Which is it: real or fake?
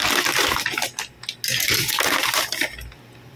real